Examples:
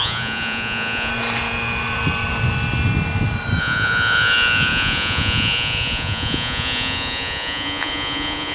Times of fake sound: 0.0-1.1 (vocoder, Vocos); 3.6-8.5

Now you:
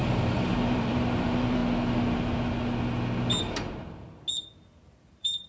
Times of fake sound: 0.0-1.6 (vocoder, BigVGAN v2); 4.8-5.5

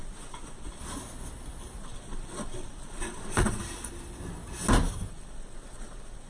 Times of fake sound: 0.0-0.8 (vocoder, Vocos); 1.8-3.6; 5.1-6.3

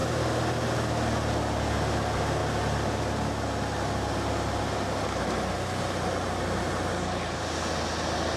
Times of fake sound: none

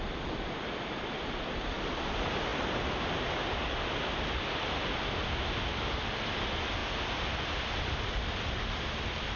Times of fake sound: none